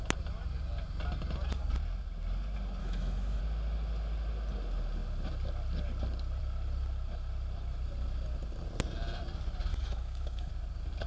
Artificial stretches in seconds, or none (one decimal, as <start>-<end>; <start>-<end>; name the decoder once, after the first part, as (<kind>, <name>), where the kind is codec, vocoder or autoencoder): 2.8-3.4 (autoencoder, DAC-VAE); 9.7-10.5